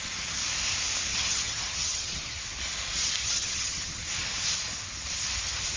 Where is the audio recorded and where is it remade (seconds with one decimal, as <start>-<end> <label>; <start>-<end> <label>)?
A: 0.0-1.1 recorded; 1.1-2.4 remade; 2.4-3.2 recorded; 3.2-4.0 remade; 4.0-5.8 recorded